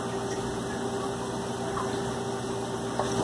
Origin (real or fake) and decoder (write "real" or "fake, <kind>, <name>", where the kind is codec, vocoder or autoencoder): real